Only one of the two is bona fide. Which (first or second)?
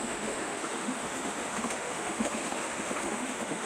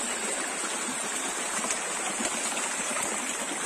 second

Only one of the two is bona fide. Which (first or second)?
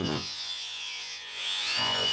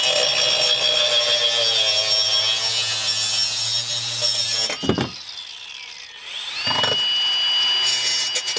second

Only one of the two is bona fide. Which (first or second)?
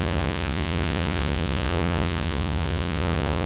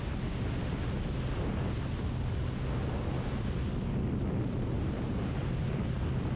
second